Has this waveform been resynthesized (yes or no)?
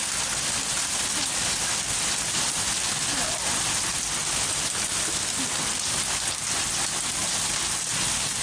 no